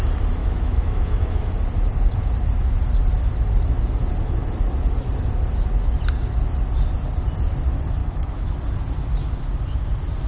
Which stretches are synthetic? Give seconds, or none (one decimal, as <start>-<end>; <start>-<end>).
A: 0.4-1.5; 8.0-8.6